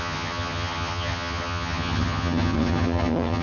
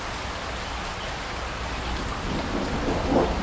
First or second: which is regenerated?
first